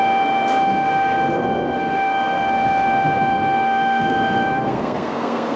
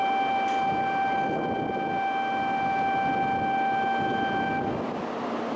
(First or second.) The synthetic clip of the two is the first